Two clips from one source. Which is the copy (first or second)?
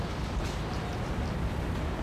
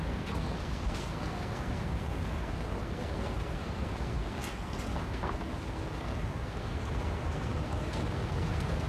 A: second